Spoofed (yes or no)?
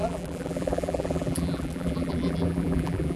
yes